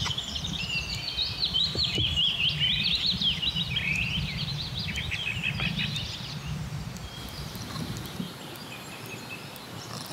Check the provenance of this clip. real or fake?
fake